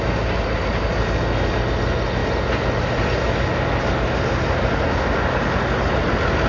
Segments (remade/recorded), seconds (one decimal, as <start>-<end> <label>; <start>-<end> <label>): 0.0-6.5 recorded